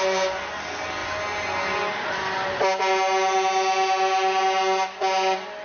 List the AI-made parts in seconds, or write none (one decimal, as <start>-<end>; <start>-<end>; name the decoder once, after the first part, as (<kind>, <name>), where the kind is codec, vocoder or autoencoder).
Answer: none